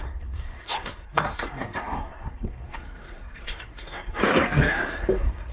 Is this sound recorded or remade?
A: remade